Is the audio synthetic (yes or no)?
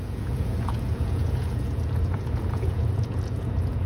yes